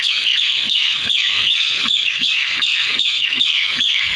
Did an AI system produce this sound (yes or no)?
yes